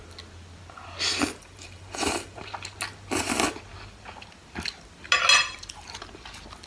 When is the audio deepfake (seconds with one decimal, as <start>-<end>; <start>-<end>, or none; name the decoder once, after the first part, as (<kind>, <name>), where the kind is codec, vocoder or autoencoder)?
1.4-2.5 (vocoder, BigVGAN v2)